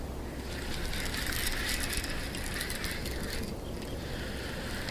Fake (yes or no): no